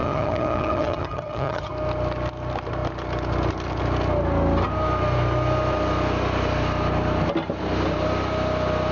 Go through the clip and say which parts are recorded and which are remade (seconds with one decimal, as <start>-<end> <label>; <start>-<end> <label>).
0.0-1.7 remade; 1.7-8.9 recorded